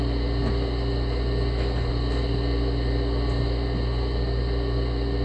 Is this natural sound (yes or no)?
yes